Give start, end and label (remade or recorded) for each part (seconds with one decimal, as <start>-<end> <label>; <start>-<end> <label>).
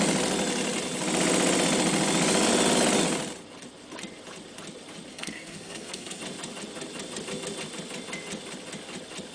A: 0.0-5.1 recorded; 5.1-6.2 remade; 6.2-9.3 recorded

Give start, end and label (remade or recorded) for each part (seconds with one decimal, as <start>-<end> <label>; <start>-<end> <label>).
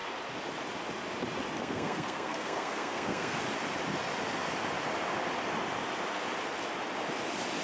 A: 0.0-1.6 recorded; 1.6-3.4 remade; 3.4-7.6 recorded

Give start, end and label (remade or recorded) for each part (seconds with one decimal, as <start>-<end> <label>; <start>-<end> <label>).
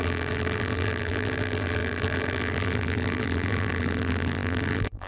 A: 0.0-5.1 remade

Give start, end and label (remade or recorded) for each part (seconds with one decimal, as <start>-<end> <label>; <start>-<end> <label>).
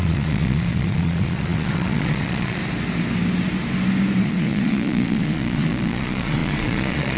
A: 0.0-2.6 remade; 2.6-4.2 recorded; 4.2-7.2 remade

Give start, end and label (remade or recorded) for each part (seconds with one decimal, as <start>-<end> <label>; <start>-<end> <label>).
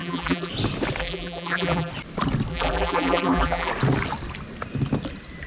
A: 0.0-0.5 remade; 0.5-1.0 recorded; 1.0-1.9 remade; 1.9-2.5 recorded; 2.5-3.7 remade; 3.7-5.5 recorded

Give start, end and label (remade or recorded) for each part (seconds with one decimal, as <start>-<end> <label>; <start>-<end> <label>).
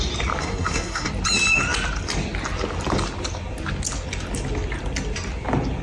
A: 0.0-0.4 recorded; 0.4-1.1 remade; 1.1-5.8 recorded